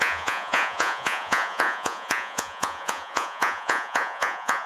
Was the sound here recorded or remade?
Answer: remade